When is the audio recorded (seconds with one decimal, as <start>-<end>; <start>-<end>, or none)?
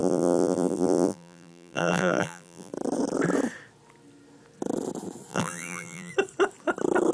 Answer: 2.7-5.3; 6.1-7.1